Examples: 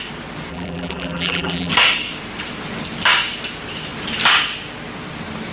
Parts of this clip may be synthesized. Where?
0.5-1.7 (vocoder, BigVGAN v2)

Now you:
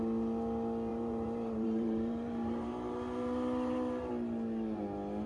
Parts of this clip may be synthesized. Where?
0.9-4.1 (vocoder, BigVGAN v2)